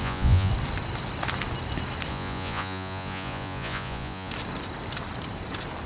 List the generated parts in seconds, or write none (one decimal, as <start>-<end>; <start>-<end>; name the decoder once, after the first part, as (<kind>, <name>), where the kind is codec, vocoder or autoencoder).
0.0-0.5 (vocoder, Vocos); 2.1-4.3